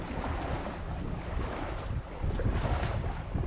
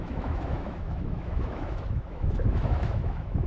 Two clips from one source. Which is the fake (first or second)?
second